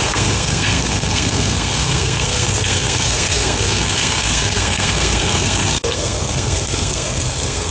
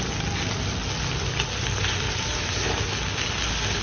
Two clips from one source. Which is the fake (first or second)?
first